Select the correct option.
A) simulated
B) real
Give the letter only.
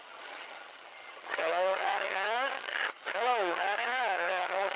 A